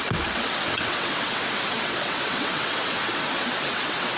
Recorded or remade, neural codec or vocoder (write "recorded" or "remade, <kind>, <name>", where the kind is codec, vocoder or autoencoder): remade, vocoder, WaveNeXt